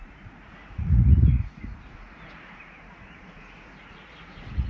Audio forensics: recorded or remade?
remade